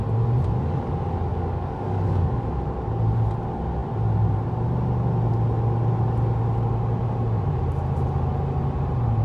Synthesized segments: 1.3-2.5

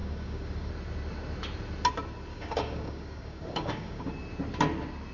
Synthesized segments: 0.0-0.7; 2.3-4.1

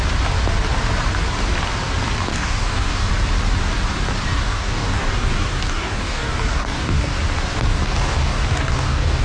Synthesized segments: 2.3-3.1; 4.4-7.1; 7.7-9.2

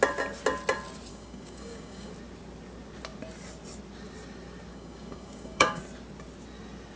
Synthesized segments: 1.1-2.1; 4.7-5.8

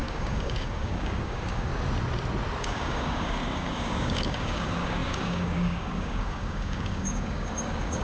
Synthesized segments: 0.0-1.7; 2.6-8.0

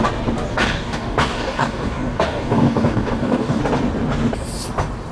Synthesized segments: 0.5-3.6